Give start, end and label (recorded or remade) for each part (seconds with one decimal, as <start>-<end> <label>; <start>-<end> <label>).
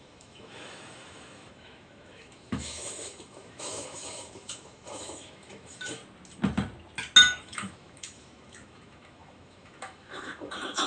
0.0-6.0 remade; 6.0-7.4 recorded; 7.4-10.9 remade